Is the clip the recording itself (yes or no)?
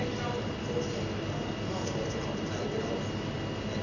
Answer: yes